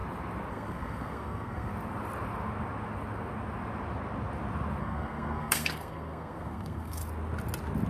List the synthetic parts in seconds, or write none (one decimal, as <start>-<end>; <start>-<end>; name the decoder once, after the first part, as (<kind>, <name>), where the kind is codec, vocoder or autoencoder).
0.5-1.7 (codec, SNAC); 4.8-7.0